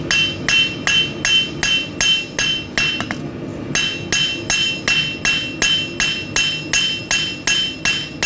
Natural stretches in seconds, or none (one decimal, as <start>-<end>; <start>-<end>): 0.0-8.3